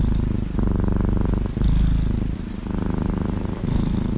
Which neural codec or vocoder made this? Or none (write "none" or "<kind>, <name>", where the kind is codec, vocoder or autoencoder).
none